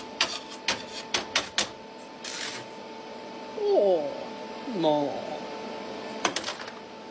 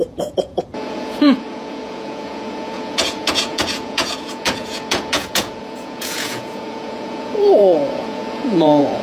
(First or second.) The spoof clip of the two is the second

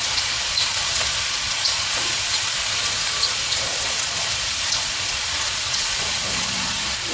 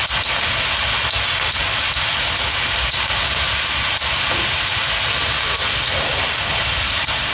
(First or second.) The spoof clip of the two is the first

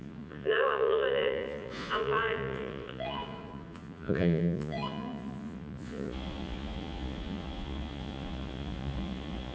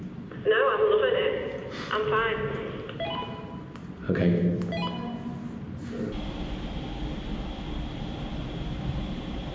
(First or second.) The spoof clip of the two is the first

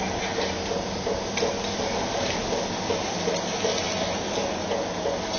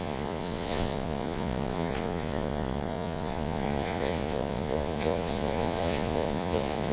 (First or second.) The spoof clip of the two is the second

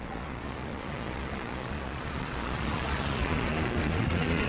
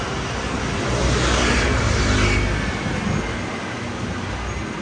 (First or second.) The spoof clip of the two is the first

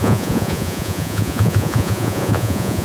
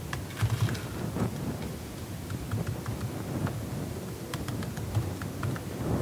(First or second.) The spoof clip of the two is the first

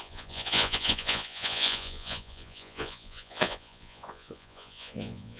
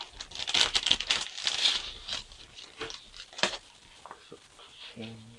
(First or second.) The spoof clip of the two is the first